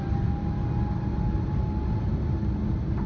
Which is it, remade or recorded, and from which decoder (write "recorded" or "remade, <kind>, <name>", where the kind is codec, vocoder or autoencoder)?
recorded